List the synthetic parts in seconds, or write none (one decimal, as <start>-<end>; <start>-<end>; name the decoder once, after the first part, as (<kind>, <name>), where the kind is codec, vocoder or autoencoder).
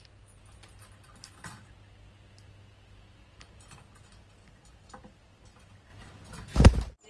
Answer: none